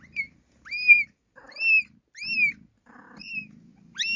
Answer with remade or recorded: recorded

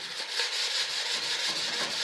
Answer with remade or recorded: recorded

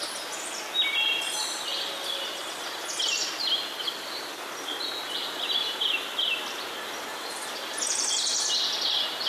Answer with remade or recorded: recorded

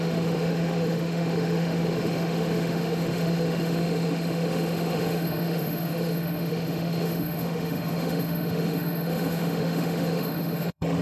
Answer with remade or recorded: remade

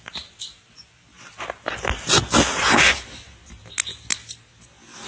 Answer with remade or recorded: recorded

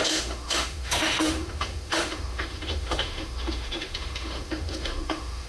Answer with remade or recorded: remade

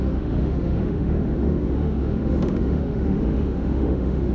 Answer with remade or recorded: remade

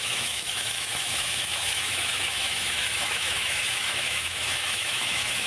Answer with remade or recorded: remade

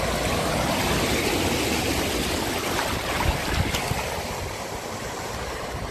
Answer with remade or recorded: recorded